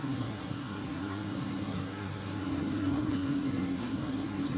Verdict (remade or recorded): remade